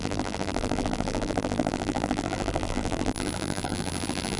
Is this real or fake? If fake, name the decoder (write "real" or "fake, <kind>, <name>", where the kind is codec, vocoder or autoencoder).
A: fake, vocoder, BigVGAN v2